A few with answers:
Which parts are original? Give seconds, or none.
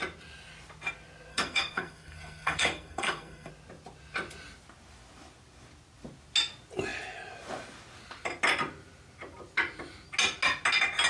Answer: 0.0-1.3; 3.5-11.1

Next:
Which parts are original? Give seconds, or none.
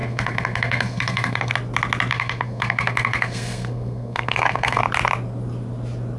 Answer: 1.5-2.1; 4.8-6.2